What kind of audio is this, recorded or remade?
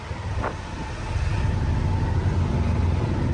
recorded